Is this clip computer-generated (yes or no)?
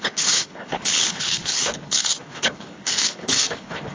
yes